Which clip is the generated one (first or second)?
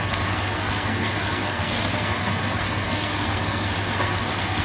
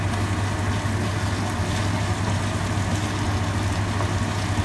first